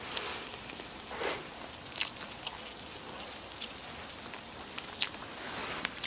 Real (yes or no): yes